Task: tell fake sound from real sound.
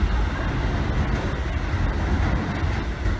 real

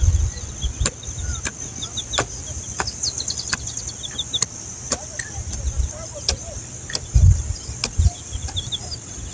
real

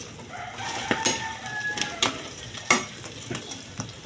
real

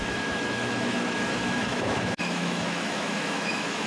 fake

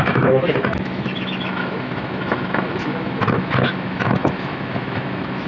fake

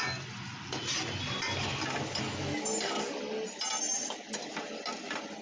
real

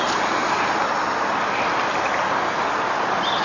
real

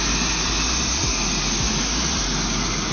real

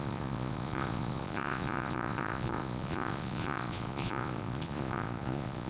fake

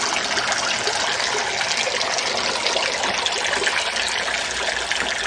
real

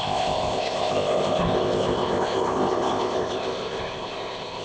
fake